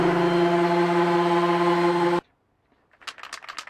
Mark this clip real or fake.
real